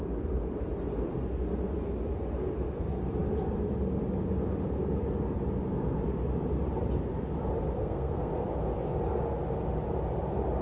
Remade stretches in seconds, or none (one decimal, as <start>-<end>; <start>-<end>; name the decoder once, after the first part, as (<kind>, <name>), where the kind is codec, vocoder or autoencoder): 7.8-8.3 (codec, SNAC)